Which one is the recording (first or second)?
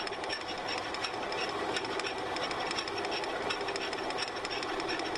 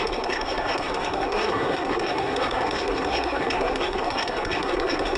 first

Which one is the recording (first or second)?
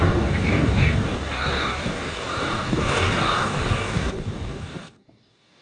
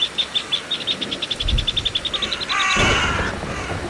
second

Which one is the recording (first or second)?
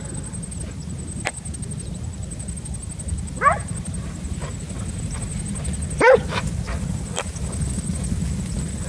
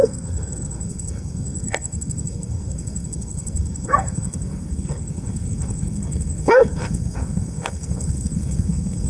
first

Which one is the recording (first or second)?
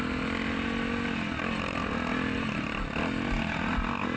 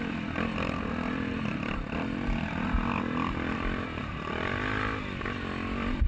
first